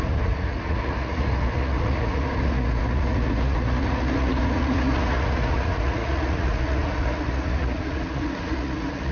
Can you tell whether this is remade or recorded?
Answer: remade